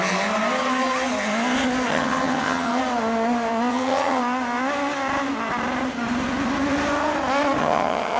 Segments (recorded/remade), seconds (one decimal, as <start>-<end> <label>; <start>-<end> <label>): 0.0-1.9 recorded; 1.9-2.8 remade; 2.8-3.7 recorded; 3.7-4.2 remade; 4.2-7.6 recorded; 7.6-8.2 remade